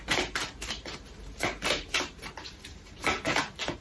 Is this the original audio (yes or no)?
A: no